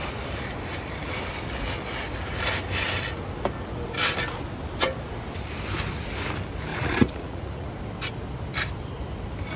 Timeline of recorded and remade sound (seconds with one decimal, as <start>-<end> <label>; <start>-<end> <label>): 0.0-6.7 recorded; 6.7-7.7 remade; 7.7-9.6 recorded